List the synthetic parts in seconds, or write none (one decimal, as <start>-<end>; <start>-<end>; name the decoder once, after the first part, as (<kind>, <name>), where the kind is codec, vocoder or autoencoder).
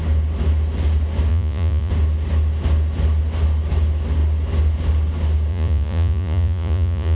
1.3-1.9 (vocoder, Vocos); 5.5-7.2